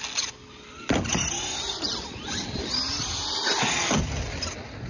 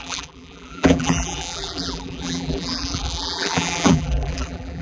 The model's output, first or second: second